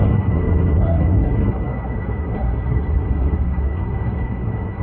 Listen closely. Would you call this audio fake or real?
fake